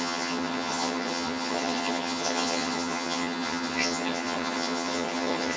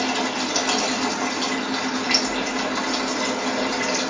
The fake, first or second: first